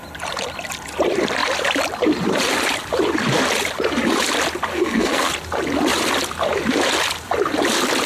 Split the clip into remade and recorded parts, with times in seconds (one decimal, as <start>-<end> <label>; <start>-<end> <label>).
0.0-4.7 recorded; 4.7-5.3 remade; 5.3-8.1 recorded